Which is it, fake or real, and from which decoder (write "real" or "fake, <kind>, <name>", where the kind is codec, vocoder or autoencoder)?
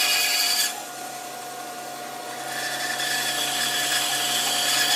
real